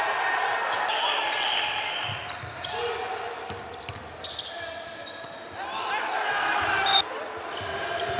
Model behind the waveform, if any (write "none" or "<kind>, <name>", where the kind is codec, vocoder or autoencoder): none